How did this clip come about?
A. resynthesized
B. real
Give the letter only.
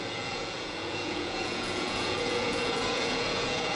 A